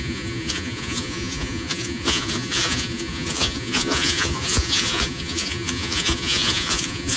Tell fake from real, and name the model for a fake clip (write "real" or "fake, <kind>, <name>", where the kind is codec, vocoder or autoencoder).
fake, vocoder, Vocos